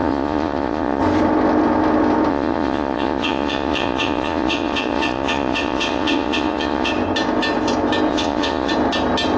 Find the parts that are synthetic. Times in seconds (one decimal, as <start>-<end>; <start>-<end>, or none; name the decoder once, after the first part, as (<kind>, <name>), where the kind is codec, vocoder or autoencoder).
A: 0.0-1.0 (vocoder, Vocos); 2.3-6.9; 8.1-8.7